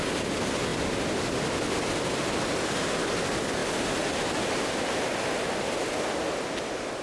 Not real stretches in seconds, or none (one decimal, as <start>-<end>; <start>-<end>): none

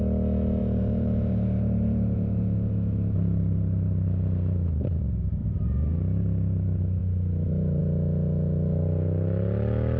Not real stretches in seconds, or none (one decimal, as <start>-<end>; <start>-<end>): 0.6-5.0; 5.4-6.0

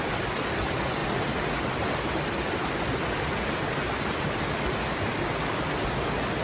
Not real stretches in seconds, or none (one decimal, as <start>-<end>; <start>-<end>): none

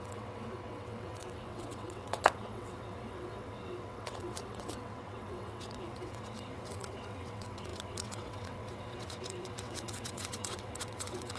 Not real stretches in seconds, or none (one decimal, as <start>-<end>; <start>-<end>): 0.0-11.4

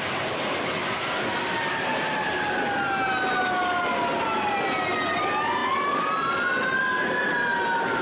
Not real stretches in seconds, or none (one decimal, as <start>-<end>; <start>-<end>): none